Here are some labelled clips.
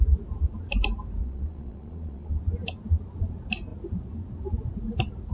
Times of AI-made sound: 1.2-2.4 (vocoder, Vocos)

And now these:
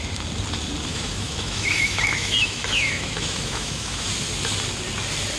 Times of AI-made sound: 0.9-4.1 (autoencoder, DAC-VAE)

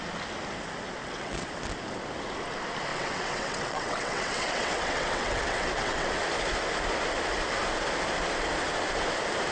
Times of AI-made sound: 1.0-1.5 (vocoder, WaveNeXt); 2.9-6.1

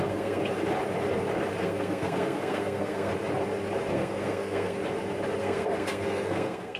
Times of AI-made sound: 0.0-0.4 (codec, SNAC); 1.6-3.1; 3.9-4.8; 5.4-6.8